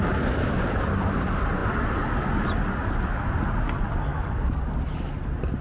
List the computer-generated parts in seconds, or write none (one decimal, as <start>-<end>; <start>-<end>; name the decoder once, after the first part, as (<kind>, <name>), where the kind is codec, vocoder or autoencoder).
4.1-4.6 (codec, DAC)